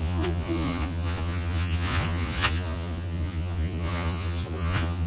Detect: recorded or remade remade